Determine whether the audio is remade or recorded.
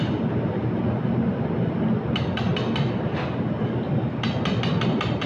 recorded